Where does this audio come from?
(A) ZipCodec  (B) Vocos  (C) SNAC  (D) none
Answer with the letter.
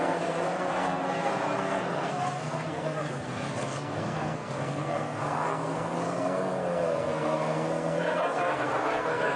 C